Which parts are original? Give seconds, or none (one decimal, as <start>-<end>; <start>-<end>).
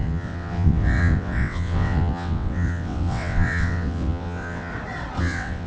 4.7-5.2